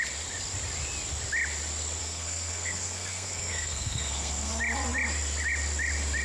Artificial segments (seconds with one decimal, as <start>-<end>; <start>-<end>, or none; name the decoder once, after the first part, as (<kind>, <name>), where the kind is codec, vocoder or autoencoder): 2.0-4.5 (codec, SNAC)

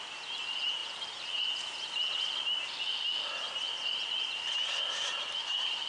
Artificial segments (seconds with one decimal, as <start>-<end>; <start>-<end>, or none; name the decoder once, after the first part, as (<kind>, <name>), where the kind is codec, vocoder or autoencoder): none

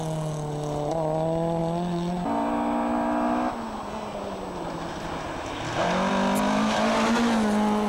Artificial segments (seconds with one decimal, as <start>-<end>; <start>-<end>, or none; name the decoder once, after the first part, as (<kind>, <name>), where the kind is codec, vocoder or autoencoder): none

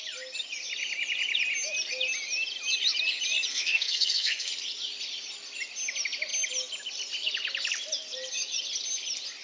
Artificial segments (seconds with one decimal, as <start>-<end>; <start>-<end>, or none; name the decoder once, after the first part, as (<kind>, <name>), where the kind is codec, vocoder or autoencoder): 3.5-4.5 (codec, SNAC)